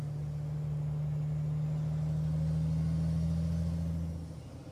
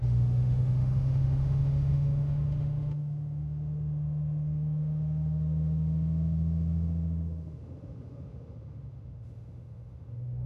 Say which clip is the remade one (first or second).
second